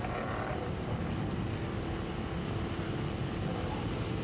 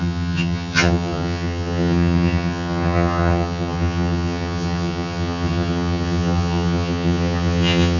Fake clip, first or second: second